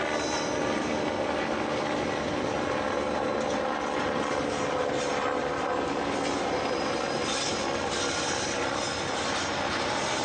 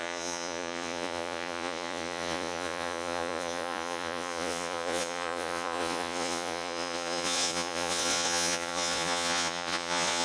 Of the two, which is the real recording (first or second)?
first